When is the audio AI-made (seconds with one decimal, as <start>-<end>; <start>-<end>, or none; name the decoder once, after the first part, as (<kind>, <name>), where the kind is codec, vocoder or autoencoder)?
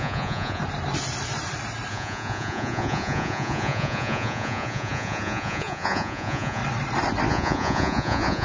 0.0-0.6 (vocoder, Vocos); 1.9-6.6; 7.3-8.4